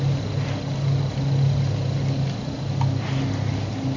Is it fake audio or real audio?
real